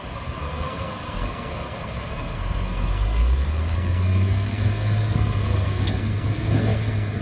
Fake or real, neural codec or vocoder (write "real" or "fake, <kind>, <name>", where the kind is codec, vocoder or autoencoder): fake, codec, SNAC